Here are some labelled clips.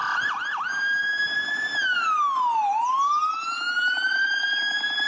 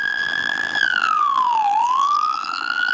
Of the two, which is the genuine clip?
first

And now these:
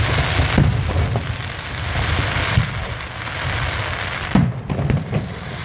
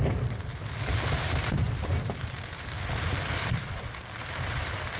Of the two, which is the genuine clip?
first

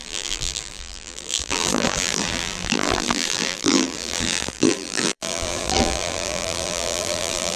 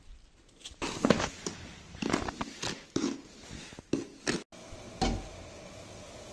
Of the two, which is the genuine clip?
second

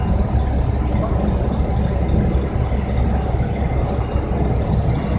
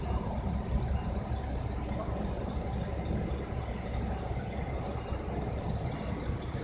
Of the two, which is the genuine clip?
first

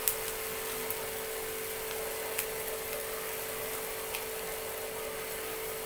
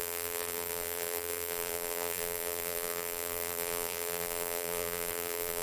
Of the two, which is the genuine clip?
first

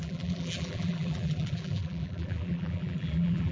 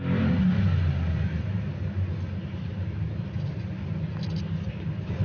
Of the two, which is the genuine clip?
second